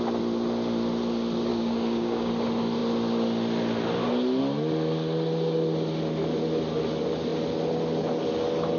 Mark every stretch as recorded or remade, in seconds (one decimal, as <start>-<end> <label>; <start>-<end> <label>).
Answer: 0.0-1.5 recorded; 1.5-2.3 remade; 2.3-8.8 recorded